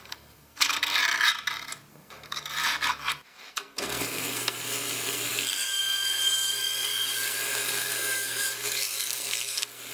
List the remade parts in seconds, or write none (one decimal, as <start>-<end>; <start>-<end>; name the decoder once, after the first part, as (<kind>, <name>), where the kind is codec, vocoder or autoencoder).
0.0-1.0 (codec, SNAC); 1.9-9.9